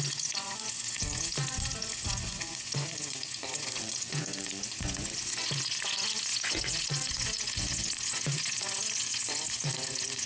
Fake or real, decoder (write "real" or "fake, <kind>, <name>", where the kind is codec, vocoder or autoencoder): fake, vocoder, Vocos